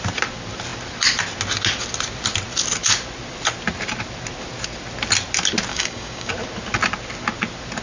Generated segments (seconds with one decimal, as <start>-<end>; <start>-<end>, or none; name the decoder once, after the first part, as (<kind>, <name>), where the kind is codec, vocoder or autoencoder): 5.7-6.3 (codec, DAC)